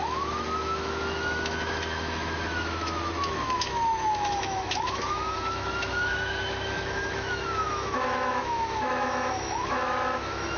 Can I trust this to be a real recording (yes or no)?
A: no